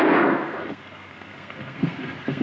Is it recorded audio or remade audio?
remade